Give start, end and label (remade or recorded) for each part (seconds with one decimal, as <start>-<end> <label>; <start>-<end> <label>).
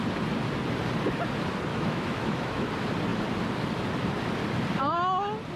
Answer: 0.0-1.7 recorded; 1.7-2.7 remade; 2.7-5.6 recorded